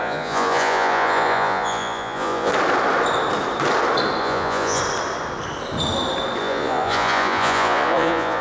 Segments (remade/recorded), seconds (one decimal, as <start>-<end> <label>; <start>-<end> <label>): 0.0-2.5 remade; 2.5-4.2 recorded; 4.2-4.8 remade; 4.8-6.4 recorded; 6.4-8.4 remade